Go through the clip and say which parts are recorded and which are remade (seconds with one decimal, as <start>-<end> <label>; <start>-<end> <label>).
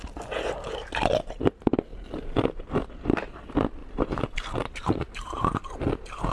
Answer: 0.0-1.9 recorded; 1.9-2.8 remade; 2.8-3.8 recorded; 3.8-5.6 remade; 5.6-6.3 recorded